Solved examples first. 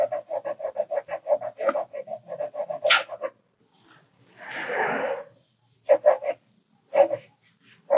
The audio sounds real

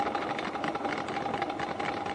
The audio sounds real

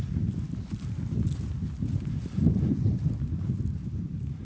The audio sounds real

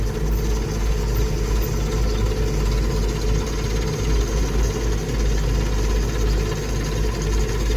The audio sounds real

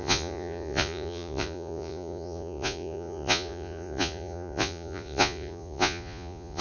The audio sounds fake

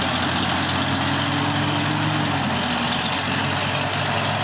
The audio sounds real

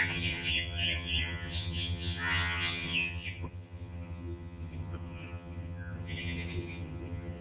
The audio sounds fake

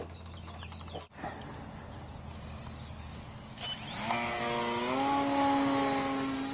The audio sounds real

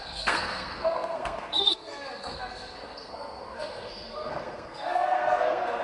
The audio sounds fake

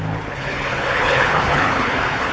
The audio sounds fake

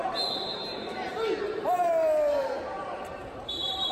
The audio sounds fake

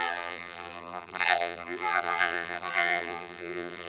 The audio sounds fake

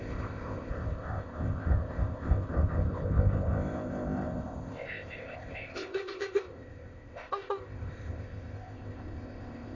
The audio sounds fake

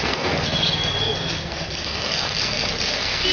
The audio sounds fake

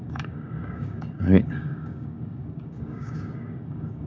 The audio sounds fake